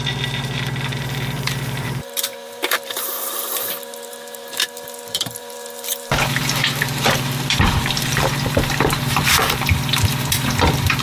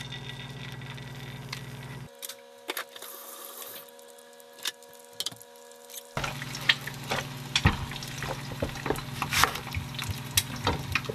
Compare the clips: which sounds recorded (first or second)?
second